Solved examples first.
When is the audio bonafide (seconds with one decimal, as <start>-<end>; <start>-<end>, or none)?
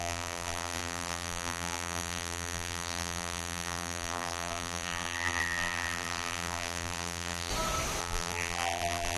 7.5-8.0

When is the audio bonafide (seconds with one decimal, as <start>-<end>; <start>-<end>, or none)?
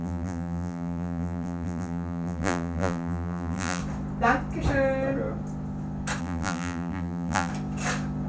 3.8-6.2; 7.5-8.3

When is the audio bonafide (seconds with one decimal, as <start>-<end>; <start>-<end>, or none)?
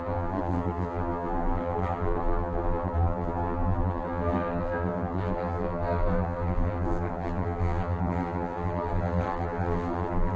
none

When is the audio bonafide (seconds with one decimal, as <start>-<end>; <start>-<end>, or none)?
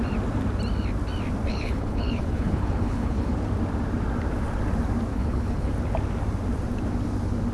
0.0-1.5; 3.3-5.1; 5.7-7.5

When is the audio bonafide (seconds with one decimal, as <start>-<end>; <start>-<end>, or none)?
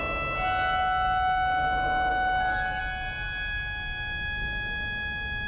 0.0-2.1; 2.8-5.5